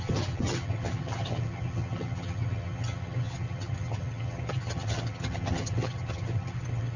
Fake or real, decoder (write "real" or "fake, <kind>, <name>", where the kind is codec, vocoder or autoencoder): fake, vocoder, HiFi-GAN